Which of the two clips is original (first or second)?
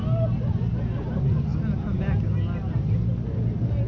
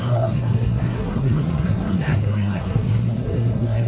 first